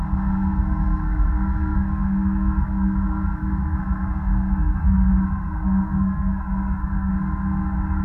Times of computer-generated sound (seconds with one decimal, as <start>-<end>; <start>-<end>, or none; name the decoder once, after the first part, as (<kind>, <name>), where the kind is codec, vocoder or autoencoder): 0.0-7.1 (codec, SNAC)